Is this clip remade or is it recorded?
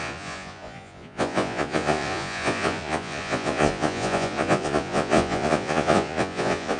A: remade